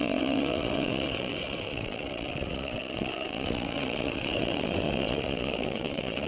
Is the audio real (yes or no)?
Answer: no